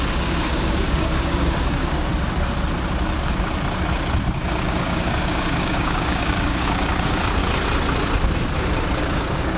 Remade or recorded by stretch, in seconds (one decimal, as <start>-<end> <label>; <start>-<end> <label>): 0.0-2.1 remade; 2.1-4.6 recorded; 4.6-7.4 remade; 7.4-9.0 recorded; 9.0-9.6 remade